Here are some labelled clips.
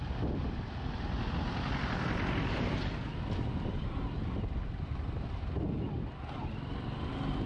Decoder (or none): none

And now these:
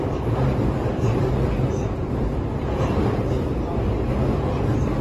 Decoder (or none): none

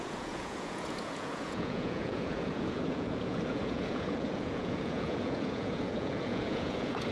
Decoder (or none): vocoder, Vocos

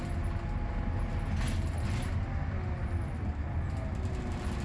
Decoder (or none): none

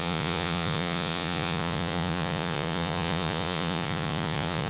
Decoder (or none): vocoder, Vocos